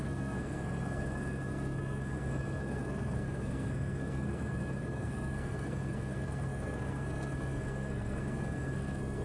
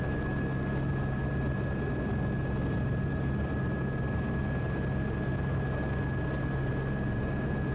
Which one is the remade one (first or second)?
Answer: first